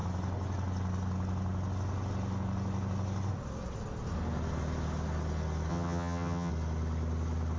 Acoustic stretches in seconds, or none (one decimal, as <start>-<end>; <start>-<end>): 0.0-5.7; 6.5-7.6